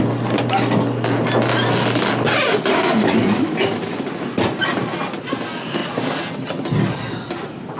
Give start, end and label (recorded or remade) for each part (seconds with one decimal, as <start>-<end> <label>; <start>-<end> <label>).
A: 0.0-7.8 recorded